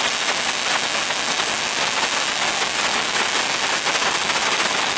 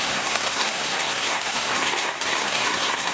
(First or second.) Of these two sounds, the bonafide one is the first